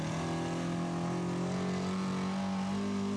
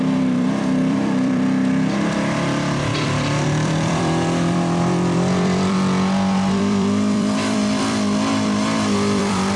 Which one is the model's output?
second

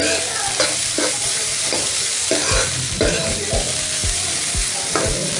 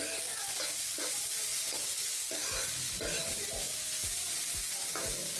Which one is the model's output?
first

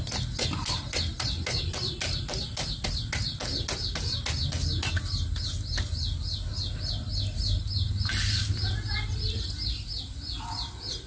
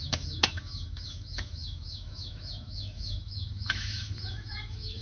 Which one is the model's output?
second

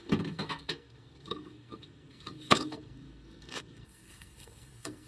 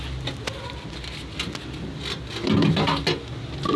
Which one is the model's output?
first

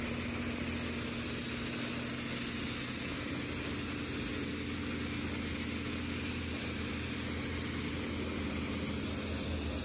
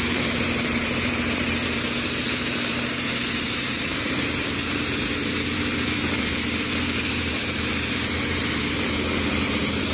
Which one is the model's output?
second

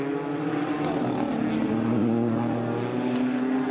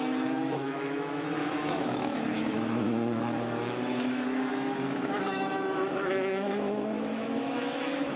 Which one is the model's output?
second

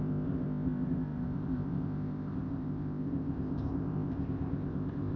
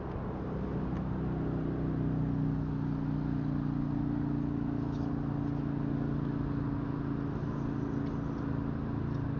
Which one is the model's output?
first